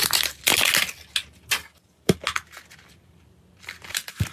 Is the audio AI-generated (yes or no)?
no